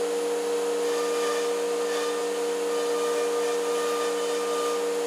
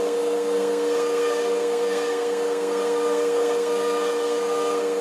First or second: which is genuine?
first